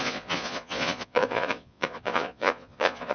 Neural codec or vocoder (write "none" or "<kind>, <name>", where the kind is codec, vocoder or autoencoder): vocoder, Vocos